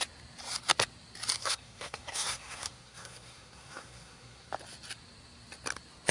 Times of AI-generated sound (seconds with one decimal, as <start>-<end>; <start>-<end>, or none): 1.4-4.5